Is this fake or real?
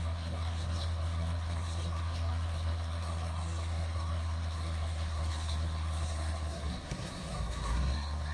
fake